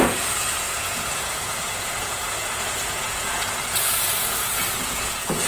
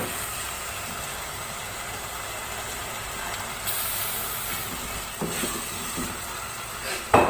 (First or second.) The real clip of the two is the second